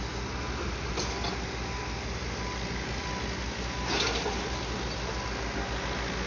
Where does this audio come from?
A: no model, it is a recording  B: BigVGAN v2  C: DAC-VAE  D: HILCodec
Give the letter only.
A